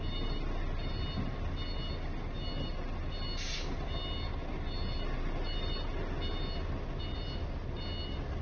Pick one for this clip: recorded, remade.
recorded